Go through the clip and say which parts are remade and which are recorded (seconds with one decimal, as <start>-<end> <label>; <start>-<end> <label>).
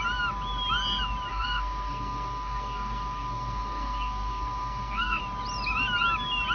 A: 0.0-1.3 recorded; 1.3-5.2 remade; 5.2-6.5 recorded